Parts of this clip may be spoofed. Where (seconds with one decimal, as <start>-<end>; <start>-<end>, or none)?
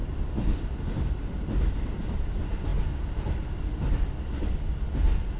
none